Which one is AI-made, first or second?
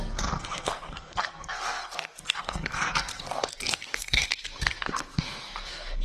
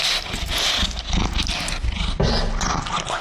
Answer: first